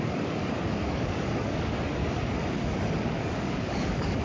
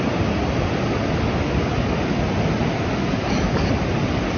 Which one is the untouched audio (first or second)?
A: second